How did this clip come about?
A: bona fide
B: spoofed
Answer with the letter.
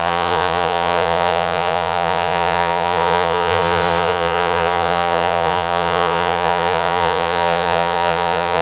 B